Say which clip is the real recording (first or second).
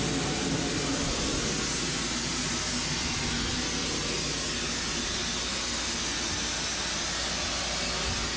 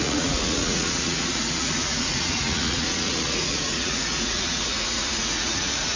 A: first